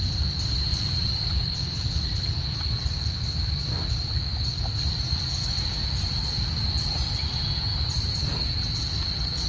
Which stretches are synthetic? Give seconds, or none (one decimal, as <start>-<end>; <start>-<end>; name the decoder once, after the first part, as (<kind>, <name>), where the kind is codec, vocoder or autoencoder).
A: 0.7-5.2 (vocoder, BigVGAN v2)